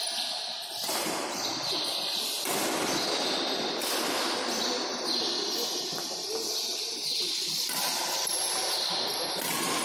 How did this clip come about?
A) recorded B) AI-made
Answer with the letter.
A